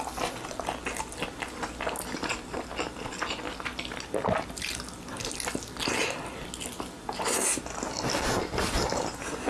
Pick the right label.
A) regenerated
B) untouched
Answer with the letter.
B